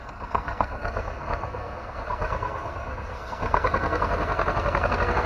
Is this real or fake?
fake